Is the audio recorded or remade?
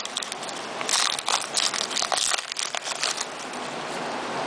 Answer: recorded